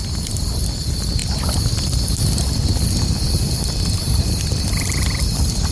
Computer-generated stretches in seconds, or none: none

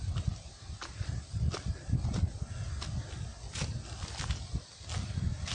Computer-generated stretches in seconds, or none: none

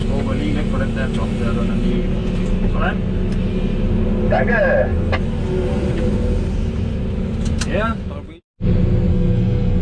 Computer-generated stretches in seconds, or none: 9.1-9.8

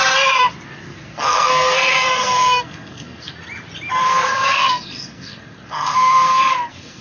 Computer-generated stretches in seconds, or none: 0.9-3.3; 4.0-7.0

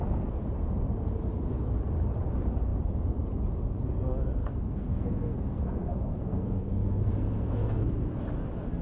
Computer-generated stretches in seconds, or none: 4.4-7.9

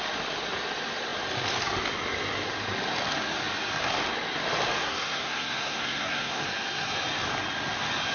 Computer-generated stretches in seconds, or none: 4.8-6.4

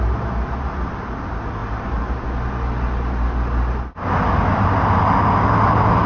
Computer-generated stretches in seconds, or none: none

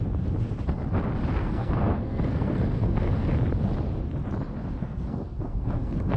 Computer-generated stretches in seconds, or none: 1.4-3.3; 4.8-6.2